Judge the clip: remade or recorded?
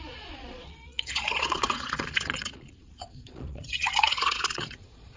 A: remade